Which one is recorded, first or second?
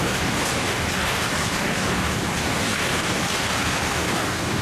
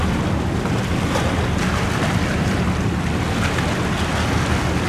second